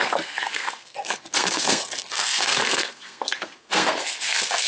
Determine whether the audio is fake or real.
fake